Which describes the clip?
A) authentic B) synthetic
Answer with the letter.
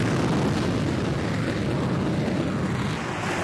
A